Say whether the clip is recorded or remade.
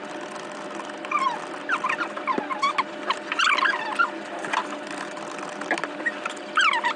recorded